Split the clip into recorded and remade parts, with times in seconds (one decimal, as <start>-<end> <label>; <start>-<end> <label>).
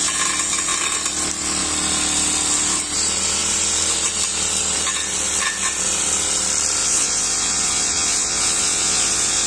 0.0-6.8 recorded; 6.8-9.5 remade